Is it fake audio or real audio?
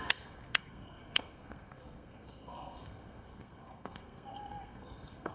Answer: fake